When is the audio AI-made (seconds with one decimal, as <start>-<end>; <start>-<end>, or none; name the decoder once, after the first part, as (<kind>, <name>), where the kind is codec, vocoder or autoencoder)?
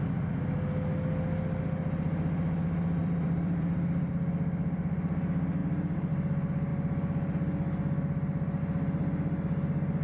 3.0-4.1 (vocoder, BigVGAN v2)